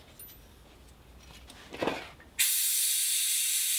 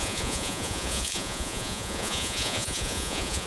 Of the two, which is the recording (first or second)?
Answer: first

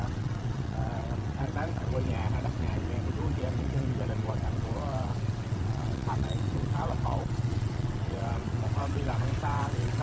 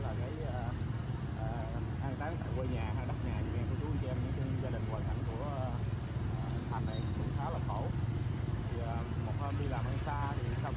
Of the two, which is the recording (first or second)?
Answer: second